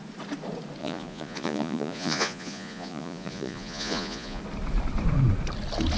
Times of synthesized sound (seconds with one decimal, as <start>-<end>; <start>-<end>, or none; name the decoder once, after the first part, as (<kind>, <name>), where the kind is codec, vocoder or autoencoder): 0.8-4.4 (vocoder, Vocos)